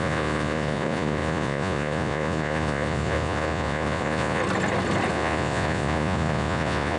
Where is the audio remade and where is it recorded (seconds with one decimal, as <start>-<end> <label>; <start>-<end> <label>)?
0.0-4.4 remade; 4.4-5.1 recorded; 5.1-7.0 remade